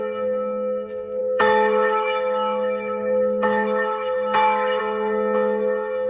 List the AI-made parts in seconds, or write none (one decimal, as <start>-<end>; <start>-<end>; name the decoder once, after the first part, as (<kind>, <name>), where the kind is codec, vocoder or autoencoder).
1.2-4.8 (autoencoder, DAC-VAE)